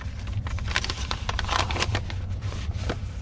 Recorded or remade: remade